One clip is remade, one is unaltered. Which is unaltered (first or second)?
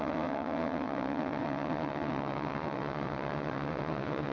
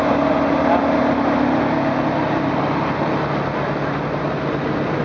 second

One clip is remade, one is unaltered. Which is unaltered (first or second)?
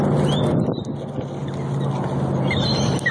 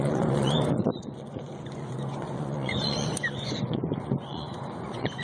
first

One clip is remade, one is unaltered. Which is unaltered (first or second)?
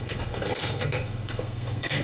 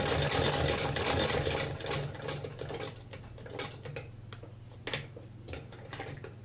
second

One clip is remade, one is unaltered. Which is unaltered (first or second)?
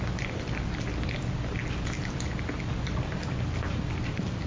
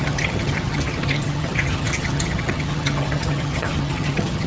first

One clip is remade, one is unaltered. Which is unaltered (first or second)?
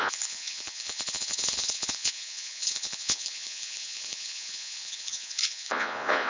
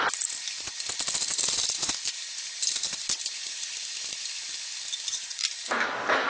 second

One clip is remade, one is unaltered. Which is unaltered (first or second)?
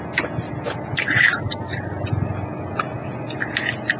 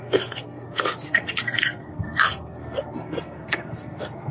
first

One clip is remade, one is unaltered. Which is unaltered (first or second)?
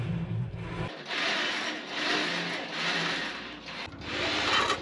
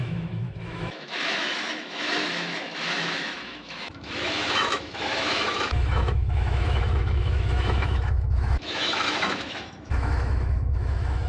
first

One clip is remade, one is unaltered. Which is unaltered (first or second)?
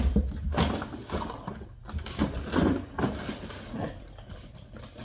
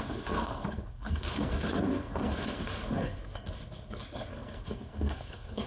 first